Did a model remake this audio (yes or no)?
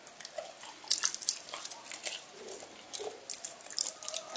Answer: no